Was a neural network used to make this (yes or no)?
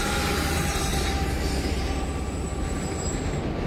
no